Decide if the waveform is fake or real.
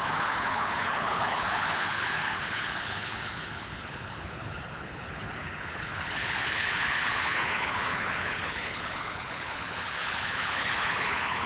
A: fake